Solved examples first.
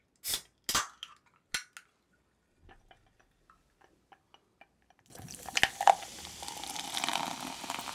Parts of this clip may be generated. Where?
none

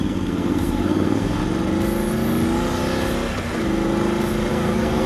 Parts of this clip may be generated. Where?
0.0-1.4 (codec, SNAC); 4.5-5.1

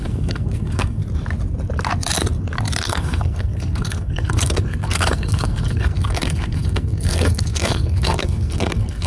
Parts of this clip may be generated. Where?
0.0-1.0 (codec, SNAC); 2.8-9.1